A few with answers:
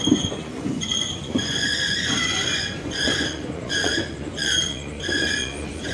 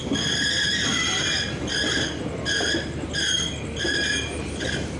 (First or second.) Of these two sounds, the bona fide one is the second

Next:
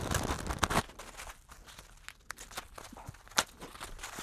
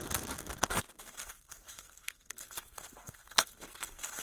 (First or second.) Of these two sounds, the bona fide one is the first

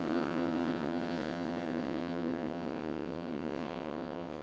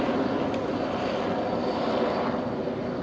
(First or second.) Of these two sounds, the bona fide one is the second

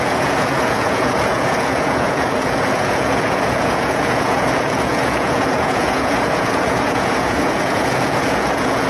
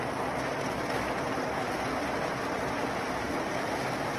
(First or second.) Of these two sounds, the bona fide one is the second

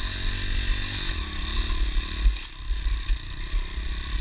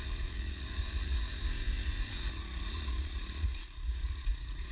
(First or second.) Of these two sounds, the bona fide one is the first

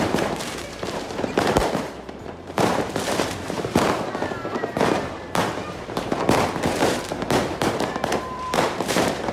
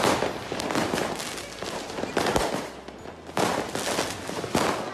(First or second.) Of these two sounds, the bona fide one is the second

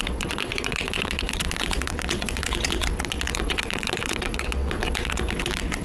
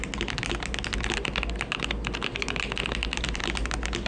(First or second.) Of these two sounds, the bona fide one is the second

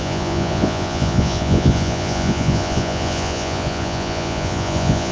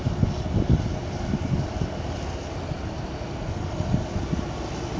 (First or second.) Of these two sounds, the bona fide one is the second